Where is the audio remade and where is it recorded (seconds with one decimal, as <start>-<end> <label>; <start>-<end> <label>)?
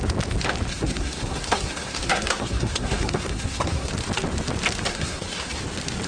0.0-0.7 recorded; 0.7-3.9 remade; 3.9-4.9 recorded; 4.9-5.6 remade; 5.6-6.1 recorded